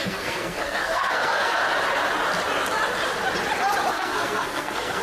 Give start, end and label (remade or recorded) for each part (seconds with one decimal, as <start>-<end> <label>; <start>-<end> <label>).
0.0-1.6 remade; 1.6-3.9 recorded; 3.9-5.0 remade